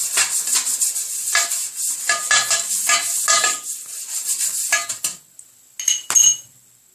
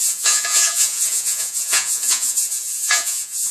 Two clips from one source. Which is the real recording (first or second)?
first